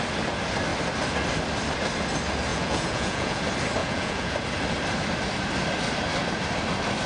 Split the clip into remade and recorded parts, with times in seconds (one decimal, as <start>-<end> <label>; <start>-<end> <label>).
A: 0.0-2.5 recorded; 2.5-3.4 remade; 3.4-3.8 recorded; 3.8-4.3 remade; 4.3-7.1 recorded